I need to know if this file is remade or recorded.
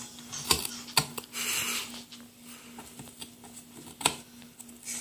remade